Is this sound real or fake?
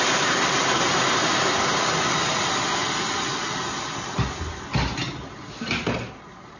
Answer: real